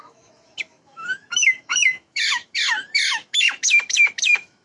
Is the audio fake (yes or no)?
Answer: yes